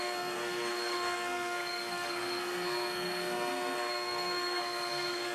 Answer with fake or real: fake